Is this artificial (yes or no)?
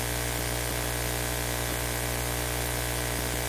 no